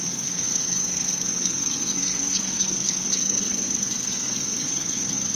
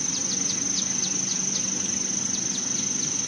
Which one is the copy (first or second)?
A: first